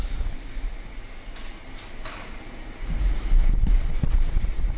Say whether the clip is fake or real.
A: real